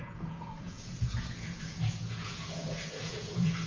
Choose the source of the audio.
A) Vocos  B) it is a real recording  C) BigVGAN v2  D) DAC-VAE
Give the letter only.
A